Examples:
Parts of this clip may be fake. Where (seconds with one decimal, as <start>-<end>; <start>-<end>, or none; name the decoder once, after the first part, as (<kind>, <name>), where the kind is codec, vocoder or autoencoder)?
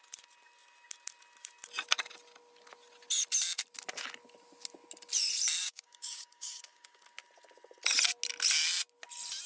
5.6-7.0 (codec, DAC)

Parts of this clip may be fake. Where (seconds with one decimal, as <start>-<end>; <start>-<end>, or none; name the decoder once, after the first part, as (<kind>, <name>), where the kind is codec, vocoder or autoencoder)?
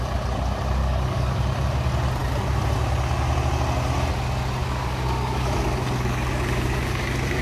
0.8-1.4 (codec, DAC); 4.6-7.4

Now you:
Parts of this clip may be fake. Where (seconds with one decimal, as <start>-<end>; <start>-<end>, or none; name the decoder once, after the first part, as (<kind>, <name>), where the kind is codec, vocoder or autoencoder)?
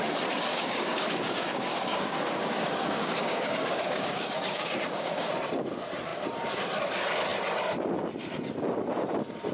0.5-5.3 (codec, DAC)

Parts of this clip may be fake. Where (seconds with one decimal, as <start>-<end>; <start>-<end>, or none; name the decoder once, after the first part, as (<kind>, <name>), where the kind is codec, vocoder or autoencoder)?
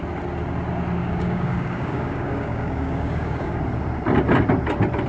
1.0-3.6 (codec, DAC)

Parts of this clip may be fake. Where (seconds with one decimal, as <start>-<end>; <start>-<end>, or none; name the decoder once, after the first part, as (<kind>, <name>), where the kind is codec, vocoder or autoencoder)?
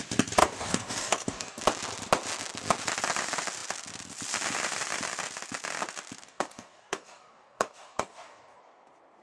0.4-1.6 (codec, DAC); 6.2-8.6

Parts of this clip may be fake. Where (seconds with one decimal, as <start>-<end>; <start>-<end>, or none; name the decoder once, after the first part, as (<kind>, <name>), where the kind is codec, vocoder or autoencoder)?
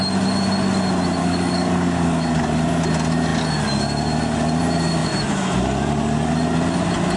1.2-2.4 (codec, DAC)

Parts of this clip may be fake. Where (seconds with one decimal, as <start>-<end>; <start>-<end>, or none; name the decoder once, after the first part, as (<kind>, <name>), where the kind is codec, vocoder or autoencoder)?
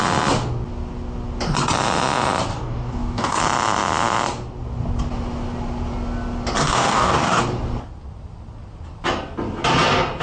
2.5-3.4 (codec, DAC); 6.6-7.4